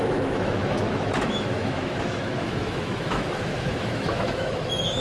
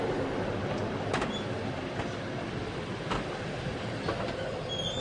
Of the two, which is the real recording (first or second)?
second